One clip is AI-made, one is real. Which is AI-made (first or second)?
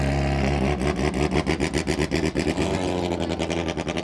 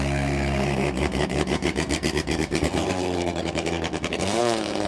second